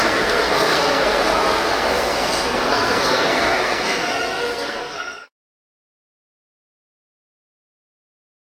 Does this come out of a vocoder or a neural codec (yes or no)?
yes